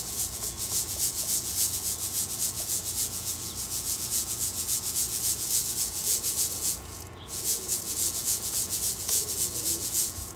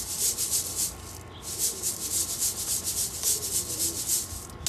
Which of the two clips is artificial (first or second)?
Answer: first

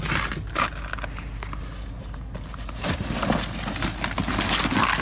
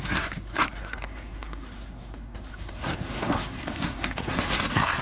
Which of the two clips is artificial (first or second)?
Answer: second